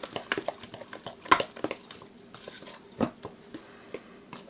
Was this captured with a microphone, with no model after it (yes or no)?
yes